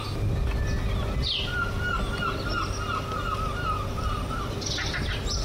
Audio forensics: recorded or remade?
recorded